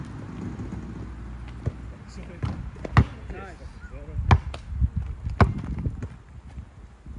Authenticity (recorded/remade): recorded